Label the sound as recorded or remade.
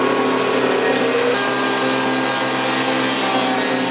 recorded